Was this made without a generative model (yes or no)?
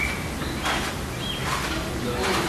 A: yes